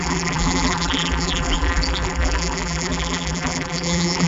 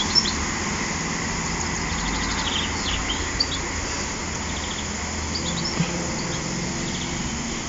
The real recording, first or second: second